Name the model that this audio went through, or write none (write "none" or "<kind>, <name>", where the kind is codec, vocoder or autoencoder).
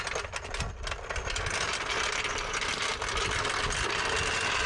none